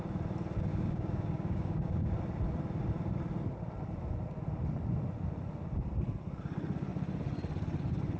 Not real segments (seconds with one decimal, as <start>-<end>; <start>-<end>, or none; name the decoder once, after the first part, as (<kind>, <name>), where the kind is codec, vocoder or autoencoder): 0.7-2.0 (codec, DAC)